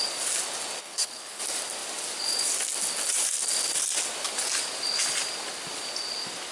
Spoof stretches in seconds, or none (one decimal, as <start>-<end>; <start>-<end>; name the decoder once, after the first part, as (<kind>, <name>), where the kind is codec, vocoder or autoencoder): 0.8-1.4 (codec, HILCodec)